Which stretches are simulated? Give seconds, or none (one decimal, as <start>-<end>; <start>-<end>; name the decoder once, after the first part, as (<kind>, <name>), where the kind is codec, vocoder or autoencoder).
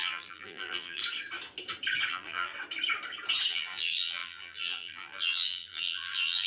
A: 0.0-1.0 (vocoder, BigVGAN v2); 2.1-2.5; 3.5-6.5